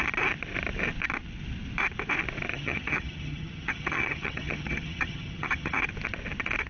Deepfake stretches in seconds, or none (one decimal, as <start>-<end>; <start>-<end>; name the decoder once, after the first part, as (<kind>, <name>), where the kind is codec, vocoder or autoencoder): 2.5-5.8 (vocoder, HiFi-GAN)